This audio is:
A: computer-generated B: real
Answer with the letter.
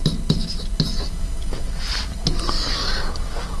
B